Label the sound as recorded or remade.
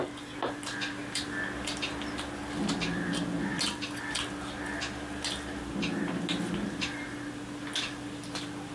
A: recorded